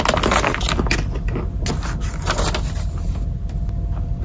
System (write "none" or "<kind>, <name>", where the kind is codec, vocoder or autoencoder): none